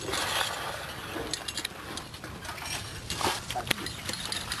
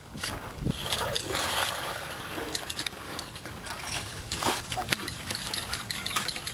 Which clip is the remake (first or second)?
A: second